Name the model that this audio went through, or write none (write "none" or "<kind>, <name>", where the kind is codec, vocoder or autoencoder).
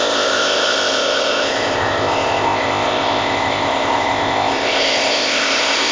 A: codec, ZipCodec